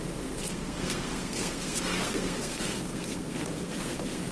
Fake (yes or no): yes